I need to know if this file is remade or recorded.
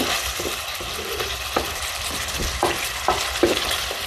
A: remade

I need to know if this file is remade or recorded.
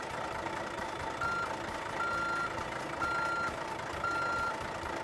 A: recorded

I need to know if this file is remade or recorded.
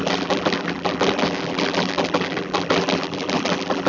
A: remade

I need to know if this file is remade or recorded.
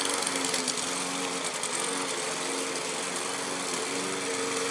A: recorded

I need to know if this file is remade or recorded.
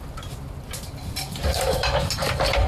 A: recorded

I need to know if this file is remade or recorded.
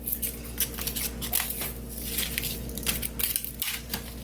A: recorded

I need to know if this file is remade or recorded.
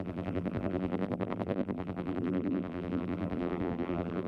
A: remade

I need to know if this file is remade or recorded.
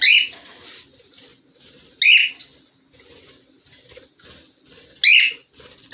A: recorded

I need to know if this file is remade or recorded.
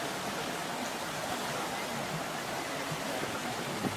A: recorded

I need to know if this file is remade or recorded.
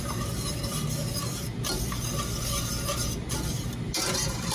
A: recorded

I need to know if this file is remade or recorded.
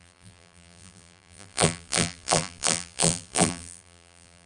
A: remade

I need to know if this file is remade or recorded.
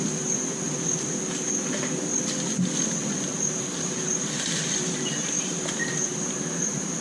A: remade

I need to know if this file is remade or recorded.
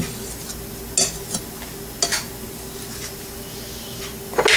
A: recorded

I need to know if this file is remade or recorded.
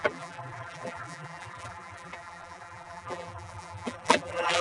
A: remade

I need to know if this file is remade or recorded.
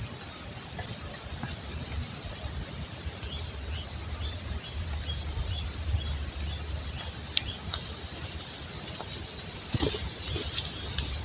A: recorded